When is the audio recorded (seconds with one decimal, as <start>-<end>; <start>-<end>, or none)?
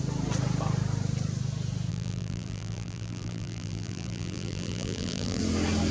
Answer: 0.0-1.9; 5.4-5.9